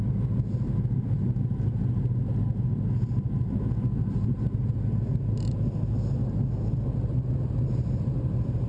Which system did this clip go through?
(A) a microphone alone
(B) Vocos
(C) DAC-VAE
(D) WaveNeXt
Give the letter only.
A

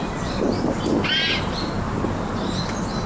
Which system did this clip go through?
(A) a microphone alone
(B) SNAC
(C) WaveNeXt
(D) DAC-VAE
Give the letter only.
A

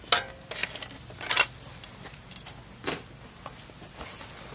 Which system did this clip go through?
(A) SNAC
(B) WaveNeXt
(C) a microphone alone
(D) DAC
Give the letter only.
C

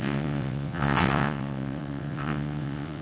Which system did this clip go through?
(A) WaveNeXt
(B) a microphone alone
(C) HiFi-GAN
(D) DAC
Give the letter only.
A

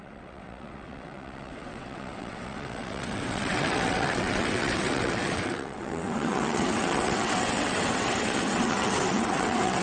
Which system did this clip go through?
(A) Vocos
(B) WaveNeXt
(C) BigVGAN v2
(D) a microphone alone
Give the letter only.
B